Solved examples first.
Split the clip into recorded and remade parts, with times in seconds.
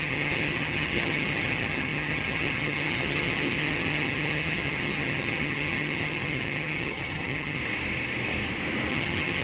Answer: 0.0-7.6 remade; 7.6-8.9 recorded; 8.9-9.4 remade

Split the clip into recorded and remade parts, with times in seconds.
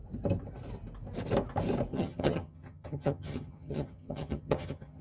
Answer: 0.0-1.9 recorded; 1.9-5.0 remade